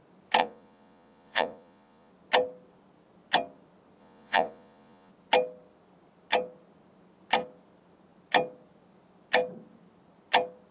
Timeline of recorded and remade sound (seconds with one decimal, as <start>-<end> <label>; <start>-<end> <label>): 0.0-0.4 recorded; 0.4-2.1 remade; 2.1-4.0 recorded; 4.0-5.1 remade; 5.1-10.7 recorded